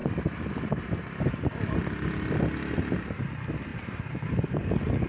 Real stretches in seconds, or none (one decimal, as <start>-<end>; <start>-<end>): 0.0-3.7